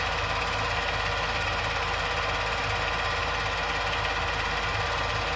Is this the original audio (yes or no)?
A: yes